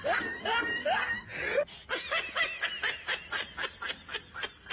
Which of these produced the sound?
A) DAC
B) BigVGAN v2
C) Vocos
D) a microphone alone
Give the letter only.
D